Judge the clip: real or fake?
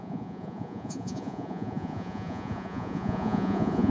fake